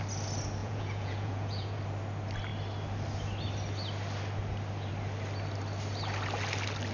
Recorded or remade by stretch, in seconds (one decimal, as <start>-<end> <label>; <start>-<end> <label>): 0.0-0.6 recorded; 0.6-1.8 remade; 1.8-6.9 recorded